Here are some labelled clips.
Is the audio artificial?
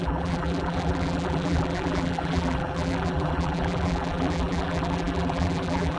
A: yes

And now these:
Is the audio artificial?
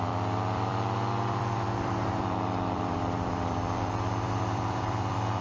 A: yes